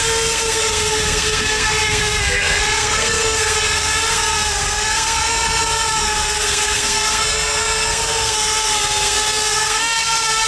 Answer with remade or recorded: remade